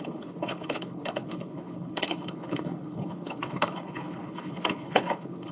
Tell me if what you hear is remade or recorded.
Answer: remade